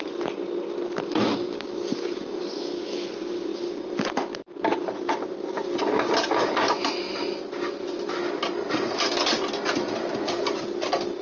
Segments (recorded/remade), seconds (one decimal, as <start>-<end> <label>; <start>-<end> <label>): 0.0-11.2 recorded